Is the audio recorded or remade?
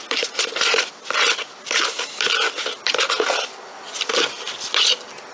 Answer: recorded